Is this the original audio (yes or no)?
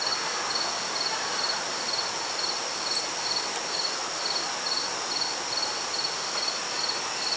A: yes